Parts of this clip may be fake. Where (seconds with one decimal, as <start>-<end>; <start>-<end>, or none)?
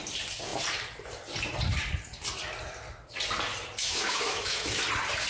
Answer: 3.8-4.8